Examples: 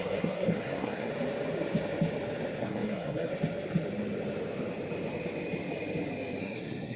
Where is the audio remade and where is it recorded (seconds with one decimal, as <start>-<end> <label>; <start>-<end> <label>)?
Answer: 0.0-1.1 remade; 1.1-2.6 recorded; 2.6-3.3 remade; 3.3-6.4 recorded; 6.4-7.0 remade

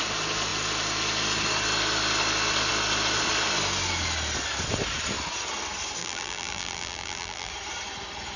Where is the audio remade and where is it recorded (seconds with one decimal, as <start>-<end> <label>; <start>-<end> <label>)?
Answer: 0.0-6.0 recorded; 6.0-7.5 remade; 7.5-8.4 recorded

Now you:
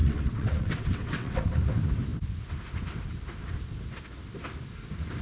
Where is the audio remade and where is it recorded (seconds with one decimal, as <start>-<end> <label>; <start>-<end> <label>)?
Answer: 0.0-1.5 remade; 1.5-5.2 recorded